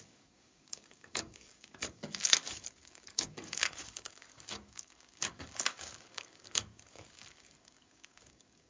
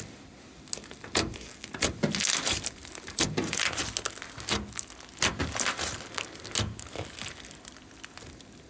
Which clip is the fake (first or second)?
first